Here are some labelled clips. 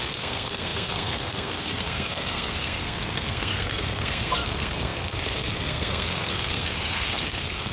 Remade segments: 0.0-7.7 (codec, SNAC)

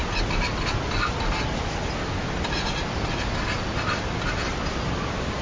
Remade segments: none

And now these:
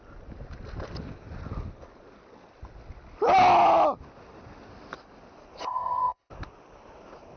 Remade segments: 5.6-6.3 (codec, ZipCodec)

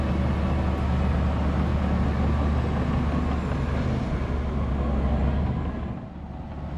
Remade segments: none

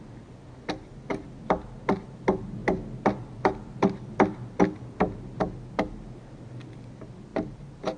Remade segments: 7.3-8.0 (vocoder, BigVGAN v2)

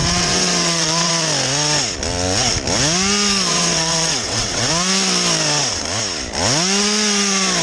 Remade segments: 0.0-1.1 (vocoder, WaveNeXt); 3.5-4.7